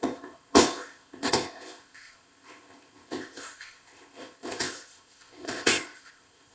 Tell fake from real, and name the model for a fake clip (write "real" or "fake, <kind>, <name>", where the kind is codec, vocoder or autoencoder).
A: fake, codec, ZipCodec